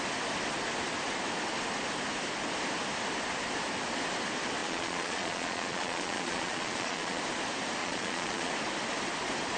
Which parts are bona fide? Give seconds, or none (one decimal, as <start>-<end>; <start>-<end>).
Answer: 0.0-4.6; 7.2-7.8; 8.5-9.6